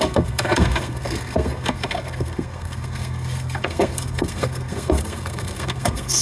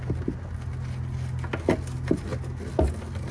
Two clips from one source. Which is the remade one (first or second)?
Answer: first